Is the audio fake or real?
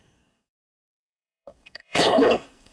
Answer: fake